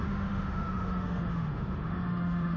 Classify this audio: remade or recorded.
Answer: remade